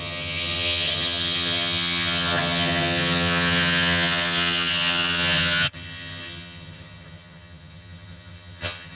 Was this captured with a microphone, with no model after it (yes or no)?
no